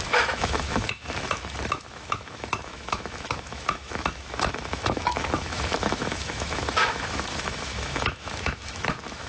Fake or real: fake